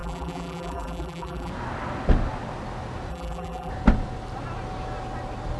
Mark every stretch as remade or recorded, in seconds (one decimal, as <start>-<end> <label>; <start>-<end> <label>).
0.0-1.5 remade; 1.5-3.1 recorded; 3.1-3.7 remade; 3.7-5.6 recorded